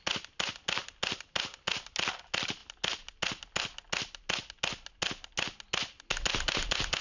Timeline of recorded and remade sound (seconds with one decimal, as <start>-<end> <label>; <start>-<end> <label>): 0.0-7.0 recorded